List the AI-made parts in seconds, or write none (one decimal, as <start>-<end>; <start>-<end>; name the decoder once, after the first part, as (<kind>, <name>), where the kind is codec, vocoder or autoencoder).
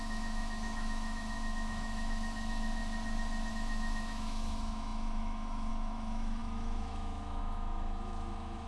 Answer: 0.0-2.8 (autoencoder, DAC-VAE); 3.5-8.7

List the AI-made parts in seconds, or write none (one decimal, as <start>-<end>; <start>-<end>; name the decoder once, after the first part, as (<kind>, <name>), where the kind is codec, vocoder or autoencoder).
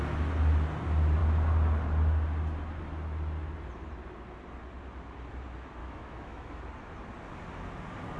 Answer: 5.8-6.6 (autoencoder, DAC-VAE)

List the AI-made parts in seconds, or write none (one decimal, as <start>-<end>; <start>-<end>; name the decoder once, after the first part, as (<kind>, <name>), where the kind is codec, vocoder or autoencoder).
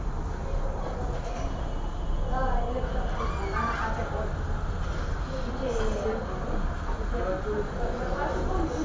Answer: none